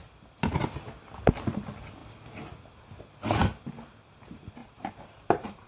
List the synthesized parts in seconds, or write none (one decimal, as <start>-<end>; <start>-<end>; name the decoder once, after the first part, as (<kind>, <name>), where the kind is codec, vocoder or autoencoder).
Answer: 4.6-5.7 (vocoder, BigVGAN v2)